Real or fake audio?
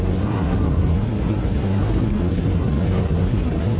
fake